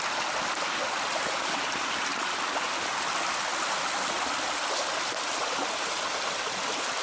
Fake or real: real